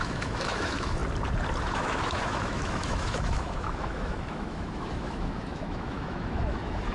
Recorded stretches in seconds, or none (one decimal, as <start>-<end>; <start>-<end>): 1.0-1.6